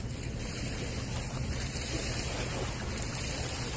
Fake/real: real